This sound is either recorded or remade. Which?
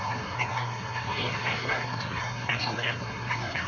remade